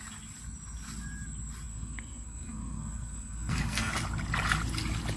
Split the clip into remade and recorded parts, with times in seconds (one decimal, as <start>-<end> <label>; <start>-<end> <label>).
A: 0.0-1.7 recorded; 1.7-3.9 remade; 3.9-5.2 recorded